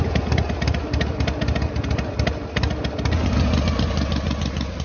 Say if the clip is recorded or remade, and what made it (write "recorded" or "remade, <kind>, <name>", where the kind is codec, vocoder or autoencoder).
recorded